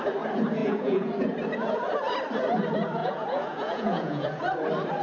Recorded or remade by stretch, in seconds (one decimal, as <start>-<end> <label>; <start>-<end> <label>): 0.0-0.6 recorded; 0.6-1.1 remade; 1.1-3.0 recorded; 3.0-4.4 remade; 4.4-5.0 recorded